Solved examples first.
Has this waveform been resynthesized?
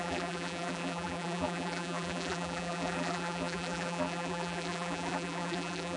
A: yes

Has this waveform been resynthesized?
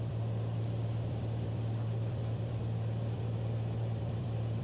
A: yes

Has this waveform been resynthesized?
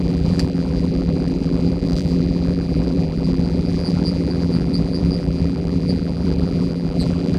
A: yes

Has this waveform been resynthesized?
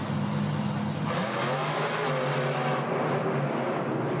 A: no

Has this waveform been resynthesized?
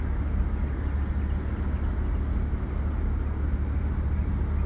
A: no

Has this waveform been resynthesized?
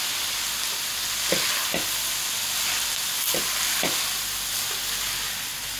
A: no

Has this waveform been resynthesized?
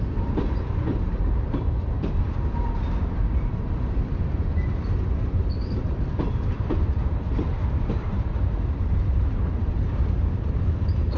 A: yes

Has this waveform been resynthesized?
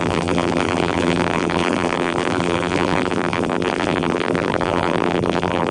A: yes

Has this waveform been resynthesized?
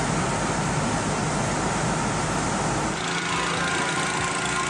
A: no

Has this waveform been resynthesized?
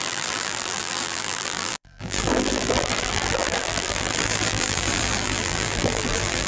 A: yes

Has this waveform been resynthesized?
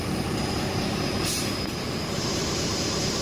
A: yes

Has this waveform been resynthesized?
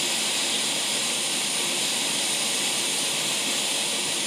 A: yes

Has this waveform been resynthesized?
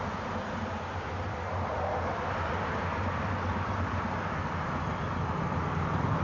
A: no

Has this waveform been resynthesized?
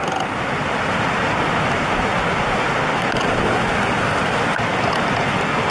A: no